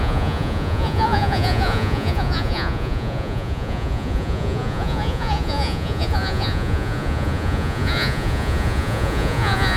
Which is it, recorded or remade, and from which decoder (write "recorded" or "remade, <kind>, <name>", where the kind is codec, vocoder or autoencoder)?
remade, vocoder, Vocos